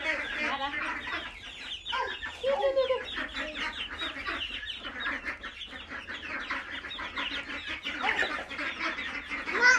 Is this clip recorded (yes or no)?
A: yes